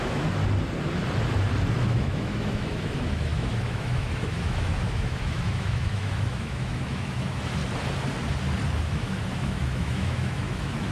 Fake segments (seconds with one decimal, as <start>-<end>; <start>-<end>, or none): 0.0-0.4; 1.8-7.6; 8.8-10.9